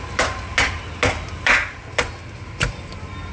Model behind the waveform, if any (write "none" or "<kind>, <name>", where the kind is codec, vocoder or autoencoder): none